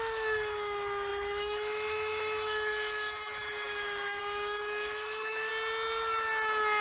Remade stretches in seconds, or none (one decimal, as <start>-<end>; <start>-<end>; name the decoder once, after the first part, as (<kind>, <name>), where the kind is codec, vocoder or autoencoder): 0.0-5.5 (autoencoder, DAC-VAE)